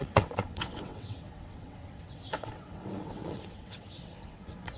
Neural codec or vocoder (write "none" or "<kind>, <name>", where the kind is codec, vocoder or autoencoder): vocoder, WaveNeXt